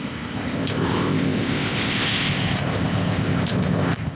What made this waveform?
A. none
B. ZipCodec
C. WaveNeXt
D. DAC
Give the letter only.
B